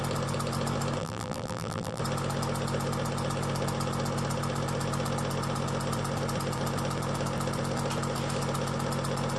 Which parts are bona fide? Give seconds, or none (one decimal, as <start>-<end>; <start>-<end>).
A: 0.0-1.0; 2.0-9.4